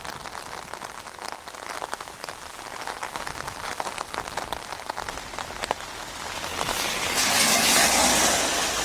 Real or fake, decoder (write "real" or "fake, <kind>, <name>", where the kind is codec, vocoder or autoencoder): real